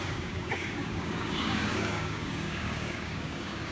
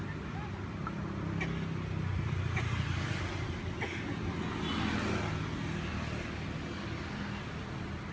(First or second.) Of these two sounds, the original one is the second